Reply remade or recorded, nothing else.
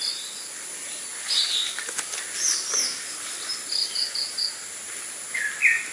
recorded